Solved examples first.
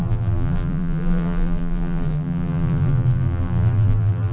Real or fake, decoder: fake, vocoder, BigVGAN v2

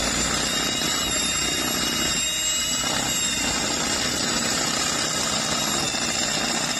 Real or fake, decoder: real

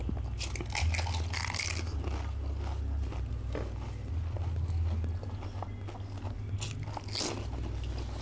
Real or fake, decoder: real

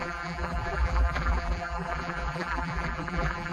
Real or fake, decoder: fake, vocoder, BigVGAN v2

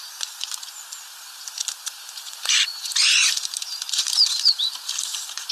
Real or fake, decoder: fake, vocoder, BigVGAN v2